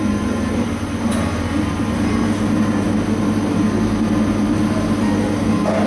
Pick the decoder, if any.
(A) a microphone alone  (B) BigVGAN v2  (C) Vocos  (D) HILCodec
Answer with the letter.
A